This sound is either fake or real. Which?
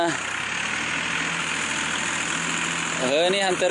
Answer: real